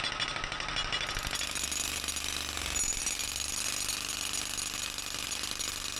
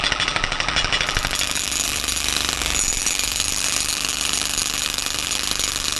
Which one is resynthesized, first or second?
second